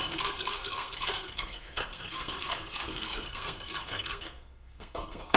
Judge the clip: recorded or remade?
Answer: remade